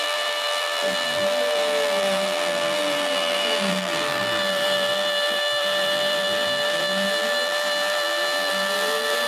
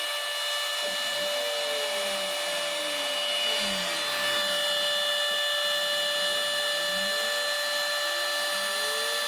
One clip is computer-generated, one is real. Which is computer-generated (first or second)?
first